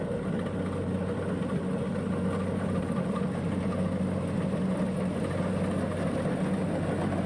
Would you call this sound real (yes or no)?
yes